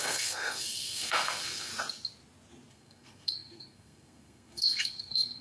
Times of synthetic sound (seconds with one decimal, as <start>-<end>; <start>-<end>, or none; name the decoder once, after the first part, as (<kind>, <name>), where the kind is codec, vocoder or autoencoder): 0.0-1.7 (codec, SNAC); 2.7-5.4

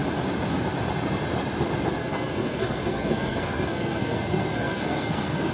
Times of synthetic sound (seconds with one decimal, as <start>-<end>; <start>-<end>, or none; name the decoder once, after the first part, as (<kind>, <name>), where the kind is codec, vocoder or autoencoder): 2.0-5.5 (codec, SNAC)

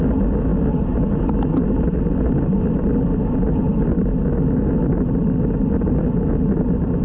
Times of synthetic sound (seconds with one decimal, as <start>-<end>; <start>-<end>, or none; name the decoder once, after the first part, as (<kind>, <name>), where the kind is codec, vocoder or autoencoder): none

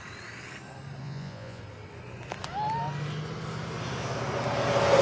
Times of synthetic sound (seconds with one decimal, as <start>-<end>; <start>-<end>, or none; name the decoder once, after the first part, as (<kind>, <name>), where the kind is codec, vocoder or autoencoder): 1.0-1.6 (vocoder, Vocos)

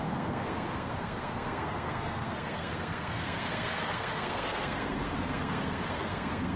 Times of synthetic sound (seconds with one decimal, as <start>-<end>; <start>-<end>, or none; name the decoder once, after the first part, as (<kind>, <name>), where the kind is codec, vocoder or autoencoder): 0.0-6.6 (codec, SNAC)

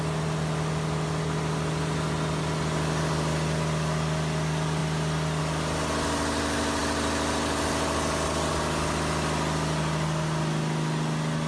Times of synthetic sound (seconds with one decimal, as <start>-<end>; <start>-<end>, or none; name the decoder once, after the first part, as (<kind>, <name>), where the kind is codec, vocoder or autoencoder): none

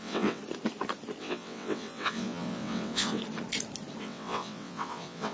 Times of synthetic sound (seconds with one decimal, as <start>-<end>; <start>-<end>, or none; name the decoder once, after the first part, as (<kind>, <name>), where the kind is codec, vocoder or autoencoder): 0.0-0.4 (vocoder, WaveNeXt); 1.2-3.2; 4.0-5.3

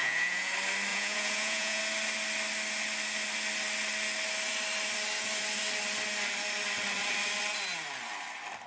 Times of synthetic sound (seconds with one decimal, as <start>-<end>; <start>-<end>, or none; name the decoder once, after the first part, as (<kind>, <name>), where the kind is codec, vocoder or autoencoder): 0.0-0.5 (vocoder, Vocos); 0.9-1.8